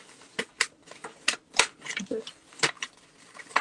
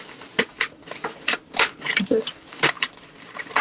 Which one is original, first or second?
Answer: first